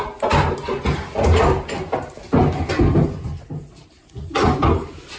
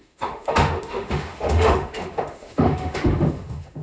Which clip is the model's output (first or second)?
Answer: second